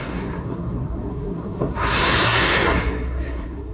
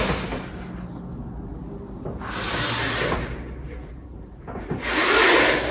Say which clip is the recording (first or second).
second